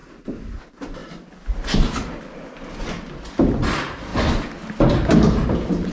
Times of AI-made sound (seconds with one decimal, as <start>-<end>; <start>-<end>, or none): 0.0-0.6